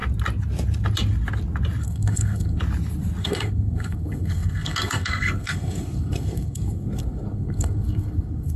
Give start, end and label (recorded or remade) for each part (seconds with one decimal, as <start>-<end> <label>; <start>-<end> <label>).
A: 0.0-1.8 recorded; 1.8-2.6 remade; 2.6-3.2 recorded; 3.2-8.6 remade